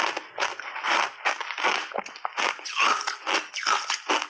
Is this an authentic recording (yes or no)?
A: yes